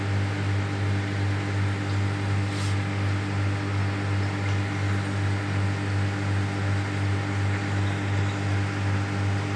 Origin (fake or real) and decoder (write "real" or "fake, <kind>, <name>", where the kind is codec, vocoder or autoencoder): real